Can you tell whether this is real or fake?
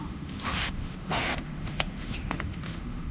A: fake